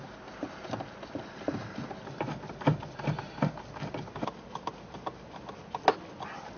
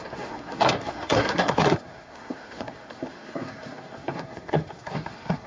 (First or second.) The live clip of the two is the first